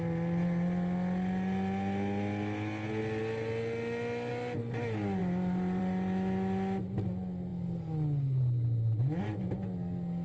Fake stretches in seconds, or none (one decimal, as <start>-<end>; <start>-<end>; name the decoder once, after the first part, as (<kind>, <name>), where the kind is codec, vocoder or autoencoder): none